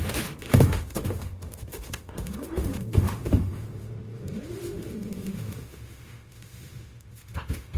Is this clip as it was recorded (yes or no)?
no